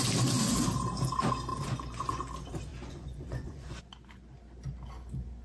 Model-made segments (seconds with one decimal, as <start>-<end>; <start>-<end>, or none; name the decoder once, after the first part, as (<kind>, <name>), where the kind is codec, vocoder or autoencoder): 1.5-2.2 (vocoder, Vocos); 2.7-3.8